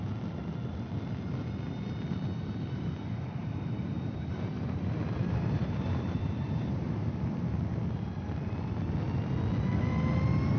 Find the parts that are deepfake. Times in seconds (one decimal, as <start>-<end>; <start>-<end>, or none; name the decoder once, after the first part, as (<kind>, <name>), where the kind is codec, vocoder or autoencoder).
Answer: 3.4-6.8 (vocoder, BigVGAN v2)